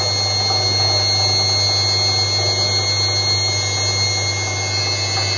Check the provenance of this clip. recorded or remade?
recorded